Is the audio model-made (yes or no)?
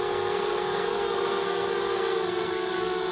yes